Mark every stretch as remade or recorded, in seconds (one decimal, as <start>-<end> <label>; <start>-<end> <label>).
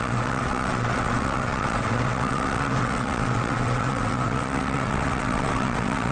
0.0-6.1 remade